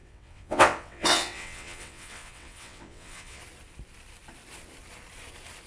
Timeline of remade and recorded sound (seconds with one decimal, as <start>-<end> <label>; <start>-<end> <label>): 0.0-3.4 remade; 3.4-5.7 recorded